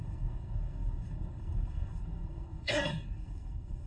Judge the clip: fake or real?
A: fake